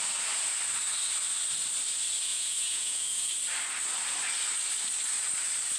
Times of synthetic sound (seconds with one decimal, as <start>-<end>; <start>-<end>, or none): 2.3-3.3